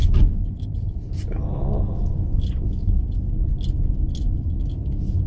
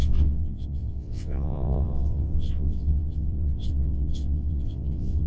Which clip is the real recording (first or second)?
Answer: first